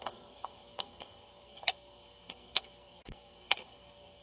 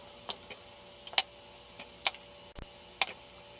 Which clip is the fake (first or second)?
first